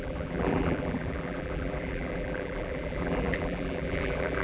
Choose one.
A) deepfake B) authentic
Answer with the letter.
A